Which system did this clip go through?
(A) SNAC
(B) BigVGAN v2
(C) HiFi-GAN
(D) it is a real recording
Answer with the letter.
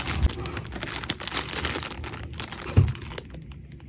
D